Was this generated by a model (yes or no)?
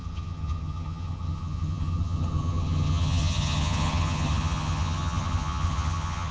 yes